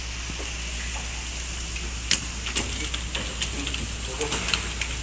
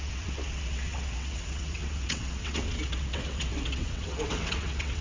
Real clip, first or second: first